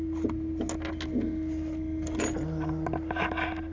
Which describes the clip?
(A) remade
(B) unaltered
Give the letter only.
B